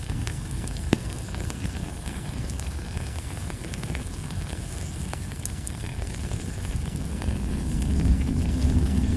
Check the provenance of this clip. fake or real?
fake